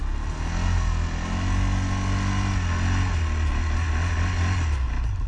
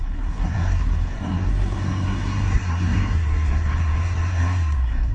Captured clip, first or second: first